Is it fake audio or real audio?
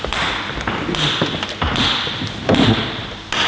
real